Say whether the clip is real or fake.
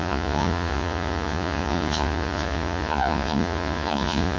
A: fake